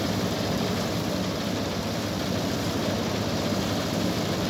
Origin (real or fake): real